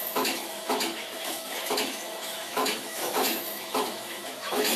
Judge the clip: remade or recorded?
remade